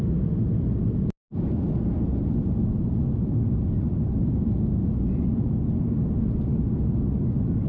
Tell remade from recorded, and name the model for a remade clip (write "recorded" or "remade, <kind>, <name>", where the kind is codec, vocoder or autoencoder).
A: recorded